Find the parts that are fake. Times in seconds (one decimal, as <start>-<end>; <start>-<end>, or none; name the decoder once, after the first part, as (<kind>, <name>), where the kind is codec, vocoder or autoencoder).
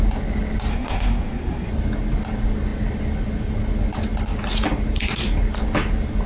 0.7-1.7 (codec, SNAC)